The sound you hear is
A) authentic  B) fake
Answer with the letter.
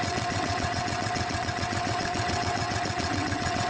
B